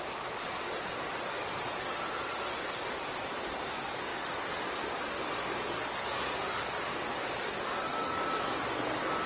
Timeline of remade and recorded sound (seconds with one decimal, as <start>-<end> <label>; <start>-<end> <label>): 0.0-7.9 recorded; 7.9-8.6 remade; 8.6-9.3 recorded